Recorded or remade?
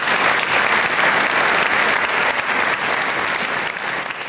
recorded